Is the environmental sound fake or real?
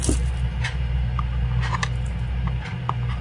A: real